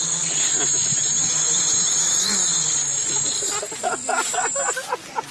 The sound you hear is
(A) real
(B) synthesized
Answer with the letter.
A